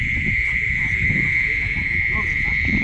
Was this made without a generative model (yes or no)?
no